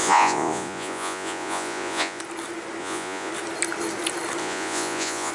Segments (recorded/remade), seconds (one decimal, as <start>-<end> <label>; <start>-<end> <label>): 0.0-2.2 remade; 2.2-2.8 recorded; 2.8-3.3 remade; 3.3-4.4 recorded; 4.4-5.3 remade